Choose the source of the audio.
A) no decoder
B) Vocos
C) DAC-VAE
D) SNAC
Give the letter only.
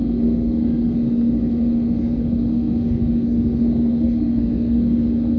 D